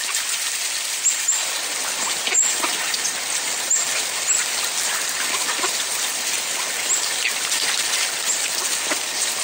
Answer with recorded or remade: recorded